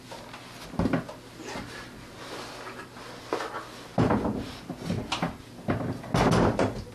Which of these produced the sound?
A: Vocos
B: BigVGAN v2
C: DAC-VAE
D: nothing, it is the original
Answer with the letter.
D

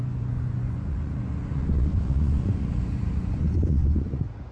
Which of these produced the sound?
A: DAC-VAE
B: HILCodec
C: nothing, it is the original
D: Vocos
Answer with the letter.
D